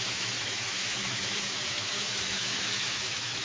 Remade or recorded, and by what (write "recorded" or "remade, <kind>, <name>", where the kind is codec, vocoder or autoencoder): remade, autoencoder, DAC-VAE